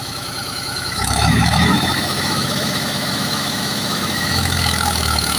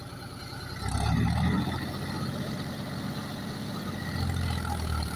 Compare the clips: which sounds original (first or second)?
second